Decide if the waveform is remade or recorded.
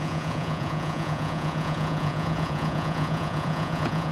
remade